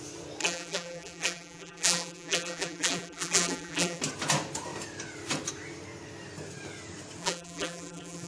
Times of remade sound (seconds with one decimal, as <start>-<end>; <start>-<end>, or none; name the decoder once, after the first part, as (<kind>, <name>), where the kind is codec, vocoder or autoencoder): 0.4-4.0 (vocoder, BigVGAN v2); 7.2-8.3

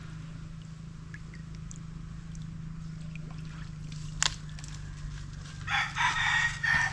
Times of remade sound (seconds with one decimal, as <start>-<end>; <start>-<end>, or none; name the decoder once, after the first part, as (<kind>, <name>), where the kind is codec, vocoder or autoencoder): none

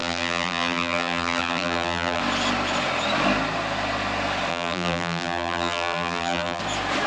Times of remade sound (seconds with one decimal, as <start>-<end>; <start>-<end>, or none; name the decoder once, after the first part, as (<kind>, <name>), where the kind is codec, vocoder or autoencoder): 0.0-2.2 (vocoder, BigVGAN v2); 4.5-6.6